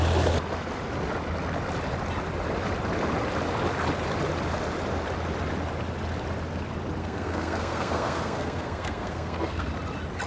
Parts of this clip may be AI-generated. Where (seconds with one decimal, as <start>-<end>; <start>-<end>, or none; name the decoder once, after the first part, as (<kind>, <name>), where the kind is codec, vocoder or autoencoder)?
7.0-9.7 (codec, SNAC)